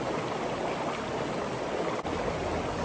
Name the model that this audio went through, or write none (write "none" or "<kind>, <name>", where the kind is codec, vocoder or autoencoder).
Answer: none